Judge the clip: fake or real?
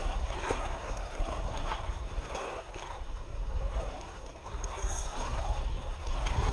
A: fake